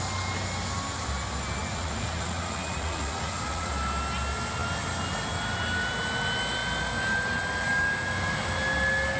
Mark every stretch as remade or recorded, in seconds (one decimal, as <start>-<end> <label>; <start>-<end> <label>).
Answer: 0.0-1.6 recorded; 1.6-3.7 remade; 3.7-9.2 recorded